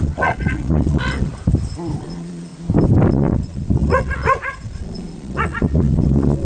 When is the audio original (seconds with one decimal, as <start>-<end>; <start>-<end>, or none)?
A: 1.3-2.0; 2.5-3.1